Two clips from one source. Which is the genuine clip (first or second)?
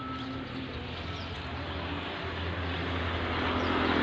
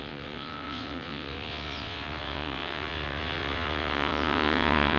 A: first